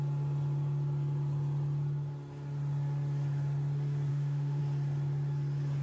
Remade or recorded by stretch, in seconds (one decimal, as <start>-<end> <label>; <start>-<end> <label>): 0.0-4.1 recorded; 4.1-4.6 remade; 4.6-5.8 recorded